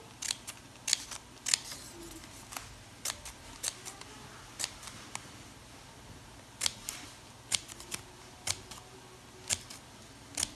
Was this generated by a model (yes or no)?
no